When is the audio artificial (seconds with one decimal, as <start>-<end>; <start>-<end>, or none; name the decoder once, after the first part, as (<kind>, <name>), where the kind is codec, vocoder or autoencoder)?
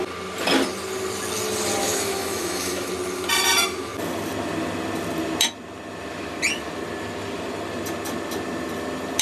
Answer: 1.8-2.9 (autoencoder, DAC-VAE)